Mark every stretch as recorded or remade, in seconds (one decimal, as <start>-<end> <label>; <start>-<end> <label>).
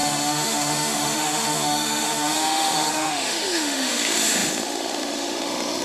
0.0-5.8 remade